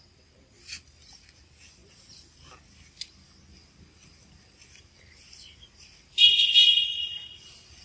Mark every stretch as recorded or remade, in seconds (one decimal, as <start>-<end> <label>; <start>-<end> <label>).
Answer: 0.0-7.8 recorded